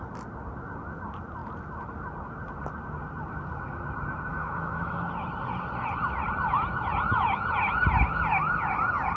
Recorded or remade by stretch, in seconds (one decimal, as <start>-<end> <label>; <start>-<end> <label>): 0.0-4.3 recorded; 4.3-5.1 remade; 5.1-9.2 recorded